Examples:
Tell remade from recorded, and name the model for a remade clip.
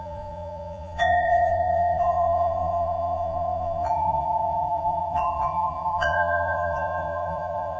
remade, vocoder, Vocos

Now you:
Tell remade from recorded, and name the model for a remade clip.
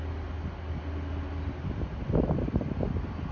recorded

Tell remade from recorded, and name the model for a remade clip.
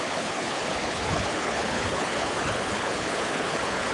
remade, codec, HILCodec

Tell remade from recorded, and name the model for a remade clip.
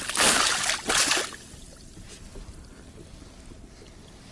recorded